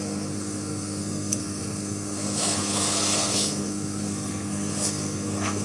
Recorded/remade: remade